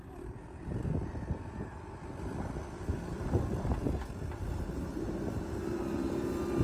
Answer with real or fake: real